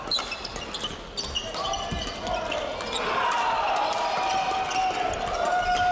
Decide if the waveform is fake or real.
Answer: real